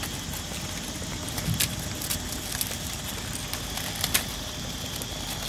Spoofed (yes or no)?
no